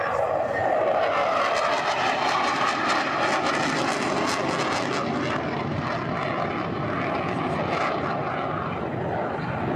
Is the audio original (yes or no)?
yes